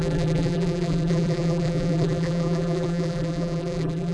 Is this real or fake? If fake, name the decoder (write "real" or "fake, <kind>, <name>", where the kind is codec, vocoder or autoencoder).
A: fake, vocoder, BigVGAN v2